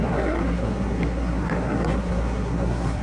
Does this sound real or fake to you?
fake